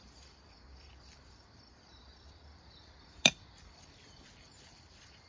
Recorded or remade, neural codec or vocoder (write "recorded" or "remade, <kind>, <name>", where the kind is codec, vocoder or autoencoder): remade, vocoder, BigVGAN v2